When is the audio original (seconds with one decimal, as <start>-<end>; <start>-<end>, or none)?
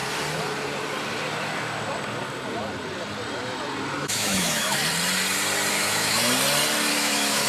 0.0-4.0; 4.8-5.7; 6.2-6.9